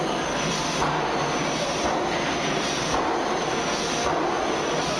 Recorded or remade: recorded